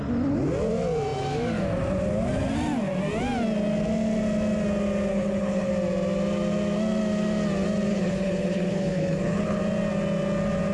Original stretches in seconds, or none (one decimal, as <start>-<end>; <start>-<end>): 0.0-5.1; 5.7-7.9; 9.6-10.7